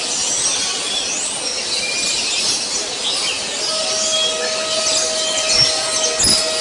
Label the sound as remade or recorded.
recorded